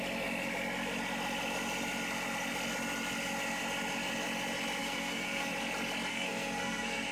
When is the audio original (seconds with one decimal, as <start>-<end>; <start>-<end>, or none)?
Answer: 0.0-4.8; 5.5-6.1